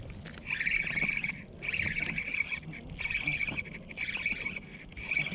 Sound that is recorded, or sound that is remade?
recorded